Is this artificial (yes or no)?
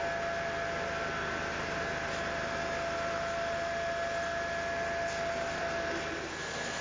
no